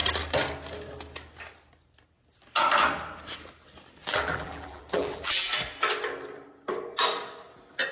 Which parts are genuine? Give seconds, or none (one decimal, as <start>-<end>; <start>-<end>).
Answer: 0.0-4.0; 5.5-7.9